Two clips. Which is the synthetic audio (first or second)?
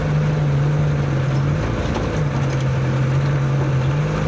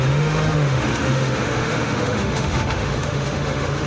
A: second